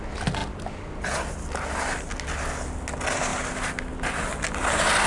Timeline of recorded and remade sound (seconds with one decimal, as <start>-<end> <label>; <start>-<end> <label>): 0.0-5.1 recorded